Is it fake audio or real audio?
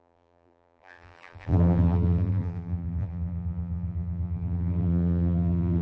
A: fake